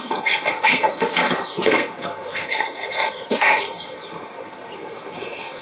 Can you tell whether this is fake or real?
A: fake